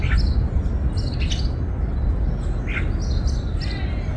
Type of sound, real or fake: real